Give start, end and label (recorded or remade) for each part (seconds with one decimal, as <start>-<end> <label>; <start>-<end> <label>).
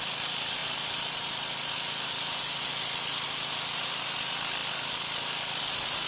0.0-6.1 recorded